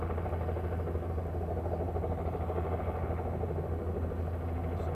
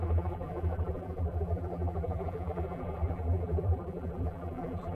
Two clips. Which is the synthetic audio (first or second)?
second